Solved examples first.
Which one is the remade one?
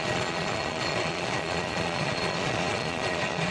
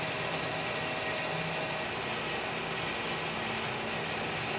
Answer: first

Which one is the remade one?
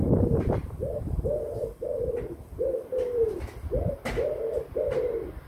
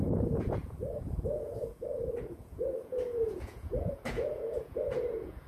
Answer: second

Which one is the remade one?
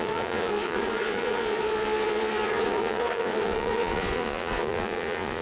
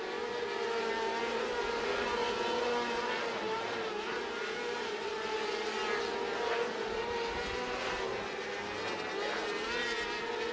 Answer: first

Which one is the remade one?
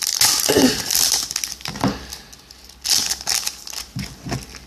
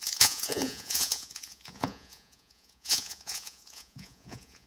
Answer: second